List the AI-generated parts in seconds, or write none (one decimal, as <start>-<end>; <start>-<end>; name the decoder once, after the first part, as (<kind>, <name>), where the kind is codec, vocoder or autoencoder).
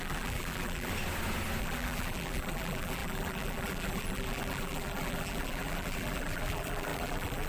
0.0-0.9 (vocoder, BigVGAN v2); 1.6-7.5